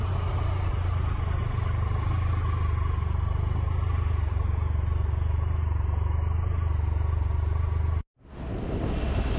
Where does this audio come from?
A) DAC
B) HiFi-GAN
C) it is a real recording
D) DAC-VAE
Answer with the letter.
C